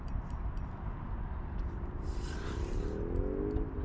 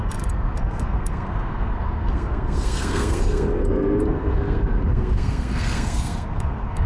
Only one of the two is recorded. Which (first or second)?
first